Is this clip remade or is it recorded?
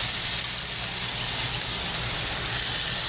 recorded